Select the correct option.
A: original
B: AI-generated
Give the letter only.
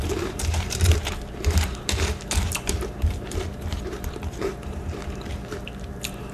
B